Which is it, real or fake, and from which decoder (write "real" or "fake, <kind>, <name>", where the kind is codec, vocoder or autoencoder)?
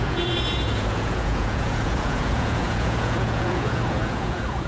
fake, vocoder, Vocos